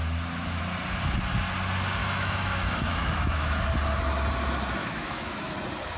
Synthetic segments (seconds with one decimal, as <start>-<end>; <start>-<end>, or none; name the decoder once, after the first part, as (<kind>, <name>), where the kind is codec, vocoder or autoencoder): 2.0-3.6 (autoencoder, DAC-VAE); 4.8-5.5